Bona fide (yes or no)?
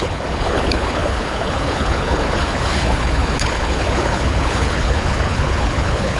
no